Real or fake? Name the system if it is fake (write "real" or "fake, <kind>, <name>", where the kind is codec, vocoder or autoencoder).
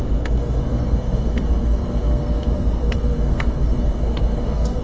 fake, codec, SNAC